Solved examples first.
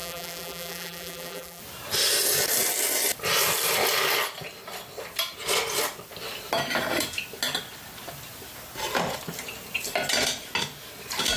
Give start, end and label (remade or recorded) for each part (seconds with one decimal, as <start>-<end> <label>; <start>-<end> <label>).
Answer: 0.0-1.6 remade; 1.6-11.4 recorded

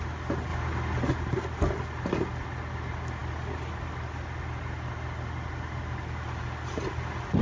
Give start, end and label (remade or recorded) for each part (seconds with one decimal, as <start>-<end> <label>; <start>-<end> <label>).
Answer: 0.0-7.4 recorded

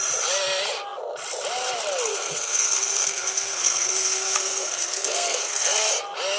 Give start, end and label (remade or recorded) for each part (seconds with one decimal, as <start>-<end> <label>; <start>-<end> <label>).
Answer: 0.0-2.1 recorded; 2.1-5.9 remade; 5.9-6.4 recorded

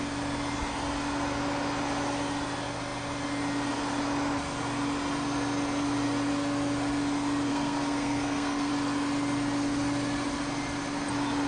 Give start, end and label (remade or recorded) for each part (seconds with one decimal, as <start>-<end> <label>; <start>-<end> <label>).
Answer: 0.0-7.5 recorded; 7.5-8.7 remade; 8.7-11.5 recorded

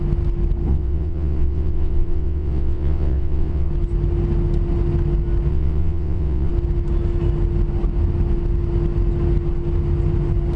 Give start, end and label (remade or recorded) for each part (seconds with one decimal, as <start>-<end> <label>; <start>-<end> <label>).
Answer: 0.0-0.7 recorded; 0.7-3.7 remade; 3.7-5.5 recorded; 5.5-6.5 remade; 6.5-10.6 recorded

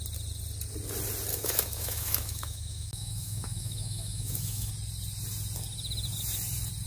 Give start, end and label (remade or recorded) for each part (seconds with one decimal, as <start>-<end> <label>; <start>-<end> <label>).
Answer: 0.0-1.3 recorded; 1.3-4.7 remade; 4.7-6.9 recorded

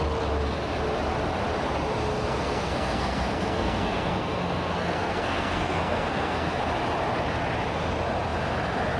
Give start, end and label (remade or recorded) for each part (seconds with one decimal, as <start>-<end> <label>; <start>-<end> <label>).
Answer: 0.0-2.1 recorded; 2.1-6.6 remade; 6.6-9.0 recorded